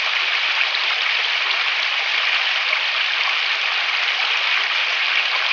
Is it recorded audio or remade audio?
recorded